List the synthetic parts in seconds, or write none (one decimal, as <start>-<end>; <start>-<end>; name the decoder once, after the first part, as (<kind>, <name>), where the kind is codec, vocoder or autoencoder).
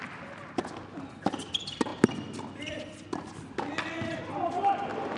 none